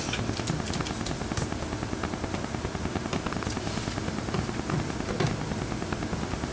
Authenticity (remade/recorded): recorded